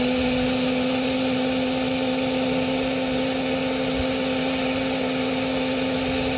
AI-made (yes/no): no